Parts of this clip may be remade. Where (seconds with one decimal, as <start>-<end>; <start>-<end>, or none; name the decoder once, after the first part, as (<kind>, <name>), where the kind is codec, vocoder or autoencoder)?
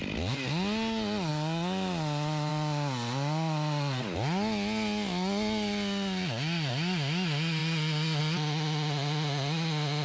none